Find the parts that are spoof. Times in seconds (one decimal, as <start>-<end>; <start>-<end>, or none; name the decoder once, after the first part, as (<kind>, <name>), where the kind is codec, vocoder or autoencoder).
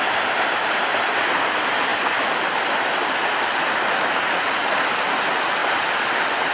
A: none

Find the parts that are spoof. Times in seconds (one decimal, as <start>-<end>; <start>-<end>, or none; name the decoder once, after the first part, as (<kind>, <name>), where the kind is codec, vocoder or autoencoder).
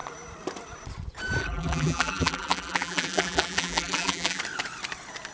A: 1.4-4.4 (vocoder, BigVGAN v2)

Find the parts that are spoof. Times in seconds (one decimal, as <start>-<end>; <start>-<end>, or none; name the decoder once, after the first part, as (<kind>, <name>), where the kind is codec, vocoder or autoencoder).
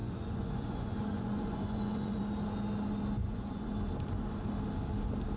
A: 0.0-2.2 (vocoder, Vocos); 3.2-3.7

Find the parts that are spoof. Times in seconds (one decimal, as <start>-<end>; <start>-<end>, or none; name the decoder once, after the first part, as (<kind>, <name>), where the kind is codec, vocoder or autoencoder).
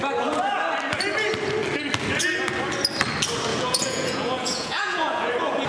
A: 3.5-5.3 (vocoder, Vocos)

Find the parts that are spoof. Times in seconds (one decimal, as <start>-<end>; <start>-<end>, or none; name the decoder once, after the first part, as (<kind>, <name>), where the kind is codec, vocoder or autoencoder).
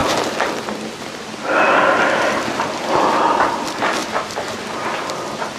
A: none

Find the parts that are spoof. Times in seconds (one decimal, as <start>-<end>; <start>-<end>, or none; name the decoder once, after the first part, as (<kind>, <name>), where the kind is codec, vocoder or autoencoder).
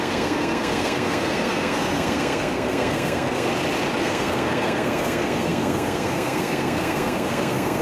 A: 0.0-3.5 (codec, SNAC); 4.0-7.8